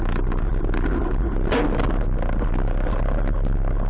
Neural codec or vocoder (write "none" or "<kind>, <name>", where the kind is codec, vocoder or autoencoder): none